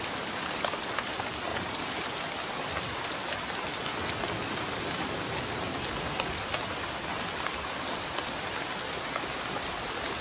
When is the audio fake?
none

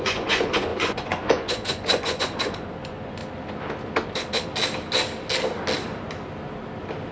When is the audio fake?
0.0-3.2 (vocoder, Vocos)

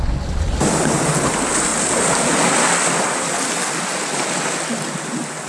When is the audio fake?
none

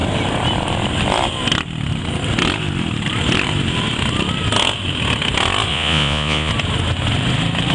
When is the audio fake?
5.7-6.5 (vocoder, Vocos)

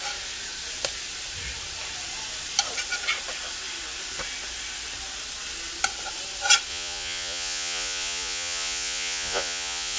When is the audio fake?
6.7-10.0 (vocoder, Vocos)

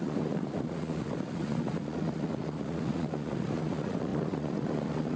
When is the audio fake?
0.0-5.2 (vocoder, Vocos)

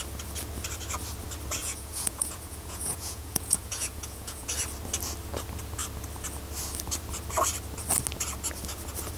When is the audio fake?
1.6-4.5 (vocoder, Vocos)